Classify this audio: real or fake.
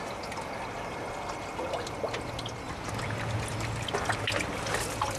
real